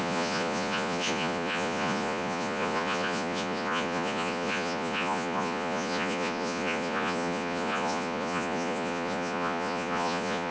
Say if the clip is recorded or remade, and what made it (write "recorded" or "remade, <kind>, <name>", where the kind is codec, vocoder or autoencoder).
remade, vocoder, Vocos